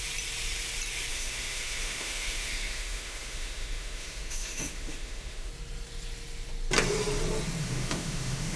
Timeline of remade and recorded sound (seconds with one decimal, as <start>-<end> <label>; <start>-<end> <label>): 0.0-1.1 recorded; 1.1-5.5 remade; 5.5-7.6 recorded; 7.6-8.6 remade